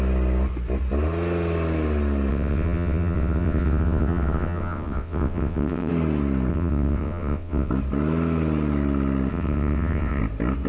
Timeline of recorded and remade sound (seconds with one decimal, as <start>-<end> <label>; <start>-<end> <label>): 0.0-2.3 recorded; 2.3-5.9 remade; 5.9-6.5 recorded; 6.5-7.7 remade; 7.7-9.3 recorded; 9.3-10.2 remade; 10.2-10.7 recorded